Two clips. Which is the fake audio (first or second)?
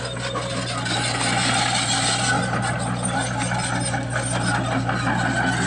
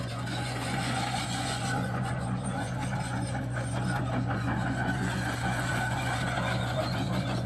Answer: second